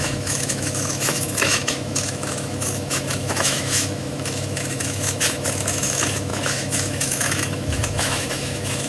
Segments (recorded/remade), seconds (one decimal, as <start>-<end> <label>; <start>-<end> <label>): 0.0-8.9 remade